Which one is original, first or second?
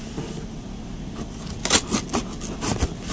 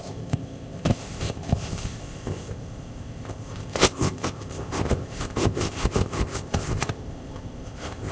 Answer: first